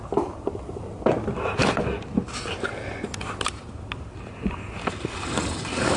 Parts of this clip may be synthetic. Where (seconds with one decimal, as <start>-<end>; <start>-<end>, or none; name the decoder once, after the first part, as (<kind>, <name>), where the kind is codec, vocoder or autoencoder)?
none

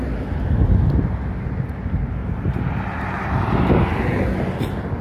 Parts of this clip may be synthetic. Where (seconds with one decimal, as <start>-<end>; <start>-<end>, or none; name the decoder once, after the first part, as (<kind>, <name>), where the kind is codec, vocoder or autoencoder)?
2.2-2.8 (vocoder, BigVGAN v2)

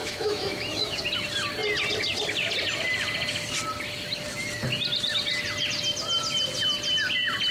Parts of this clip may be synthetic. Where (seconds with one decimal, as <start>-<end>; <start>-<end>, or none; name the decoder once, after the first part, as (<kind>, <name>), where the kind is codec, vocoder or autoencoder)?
0.0-1.0 (autoencoder, DAC-VAE)

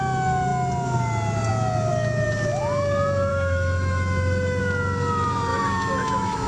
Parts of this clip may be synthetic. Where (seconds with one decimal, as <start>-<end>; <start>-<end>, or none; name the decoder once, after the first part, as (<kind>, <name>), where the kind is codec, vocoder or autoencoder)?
3.3-4.6 (autoencoder, DAC-VAE); 5.5-6.5

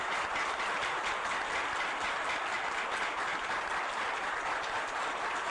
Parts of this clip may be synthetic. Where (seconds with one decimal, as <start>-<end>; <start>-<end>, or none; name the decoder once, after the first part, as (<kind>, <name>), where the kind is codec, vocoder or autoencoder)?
3.1-5.5 (vocoder, BigVGAN v2)

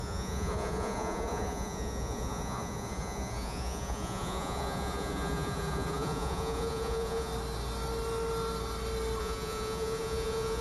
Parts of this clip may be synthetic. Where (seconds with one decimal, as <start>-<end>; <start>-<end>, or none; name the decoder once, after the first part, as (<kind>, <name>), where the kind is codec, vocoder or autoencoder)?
0.0-7.3 (vocoder, Vocos); 9.2-10.6

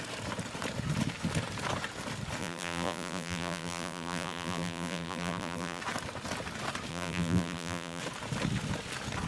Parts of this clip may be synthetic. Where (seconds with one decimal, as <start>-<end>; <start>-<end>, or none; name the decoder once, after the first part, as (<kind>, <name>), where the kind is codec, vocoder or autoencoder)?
2.4-5.8 (vocoder, BigVGAN v2); 6.9-8.0